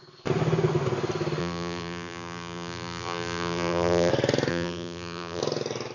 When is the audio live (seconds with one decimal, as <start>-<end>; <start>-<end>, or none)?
0.0-1.4; 4.1-4.5; 5.4-5.9